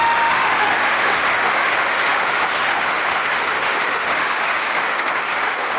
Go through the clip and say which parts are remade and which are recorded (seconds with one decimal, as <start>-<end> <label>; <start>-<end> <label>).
0.0-5.8 remade